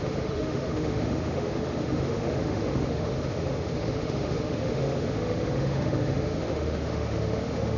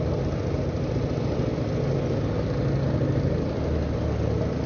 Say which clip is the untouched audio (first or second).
second